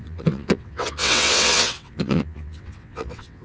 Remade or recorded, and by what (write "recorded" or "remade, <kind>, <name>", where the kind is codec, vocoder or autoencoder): remade, vocoder, WaveNeXt